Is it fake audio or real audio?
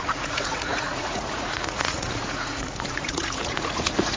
fake